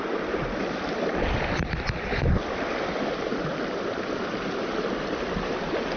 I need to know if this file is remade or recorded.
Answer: recorded